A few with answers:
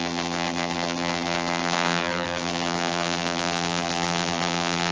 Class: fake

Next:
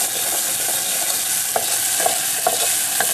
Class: real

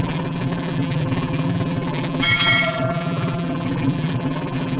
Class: fake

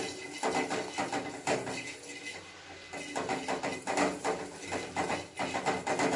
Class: real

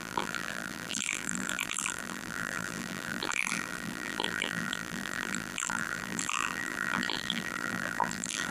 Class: fake